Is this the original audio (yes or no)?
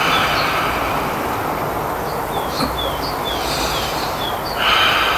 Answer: yes